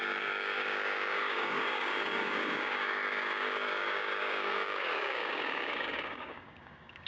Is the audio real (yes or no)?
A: no